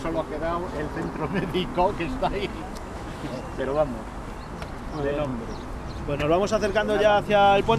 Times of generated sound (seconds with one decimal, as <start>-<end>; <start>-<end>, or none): 2.7-3.3